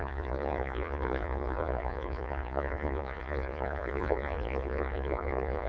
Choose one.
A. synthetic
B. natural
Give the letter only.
A